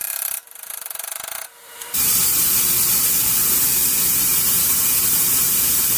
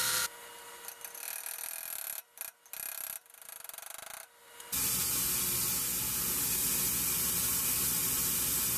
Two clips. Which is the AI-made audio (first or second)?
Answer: first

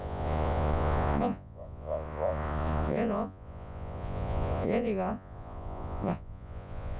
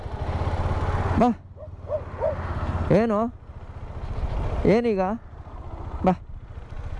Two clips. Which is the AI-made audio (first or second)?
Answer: first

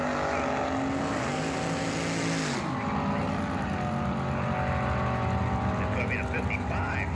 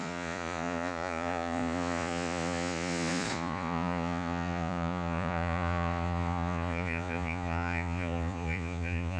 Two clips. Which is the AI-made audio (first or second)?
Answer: second